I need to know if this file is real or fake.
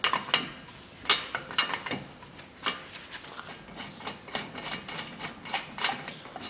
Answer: real